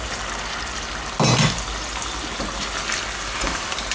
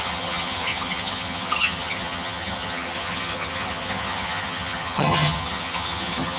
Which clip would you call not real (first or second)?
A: second